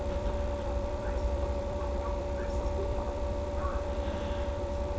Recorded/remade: remade